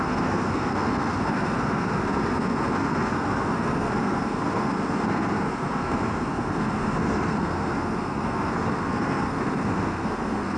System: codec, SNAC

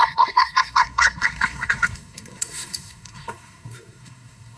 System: codec, SNAC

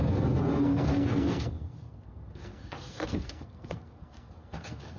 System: codec, SNAC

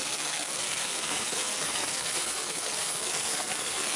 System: codec, SNAC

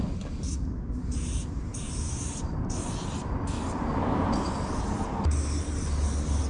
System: none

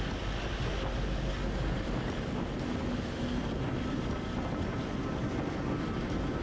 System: none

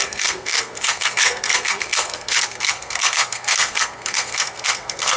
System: codec, SNAC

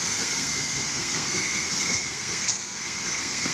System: codec, SNAC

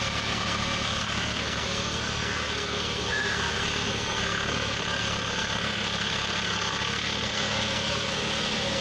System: codec, SNAC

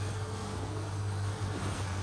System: codec, SNAC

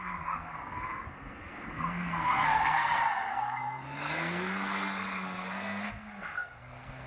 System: codec, SNAC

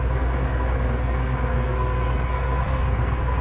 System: codec, SNAC